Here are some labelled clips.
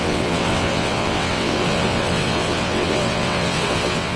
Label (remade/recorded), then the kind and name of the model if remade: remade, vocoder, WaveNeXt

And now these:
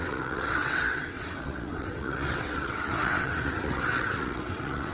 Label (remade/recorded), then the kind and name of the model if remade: remade, vocoder, WaveNeXt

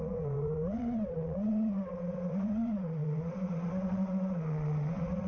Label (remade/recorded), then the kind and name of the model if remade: remade, vocoder, WaveNeXt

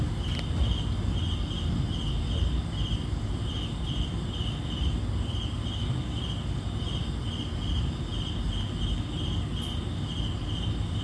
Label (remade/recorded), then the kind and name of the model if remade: recorded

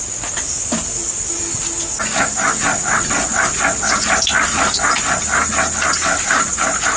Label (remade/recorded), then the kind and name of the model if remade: recorded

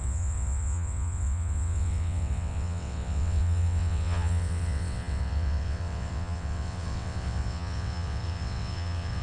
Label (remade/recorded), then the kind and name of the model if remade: remade, vocoder, WaveNeXt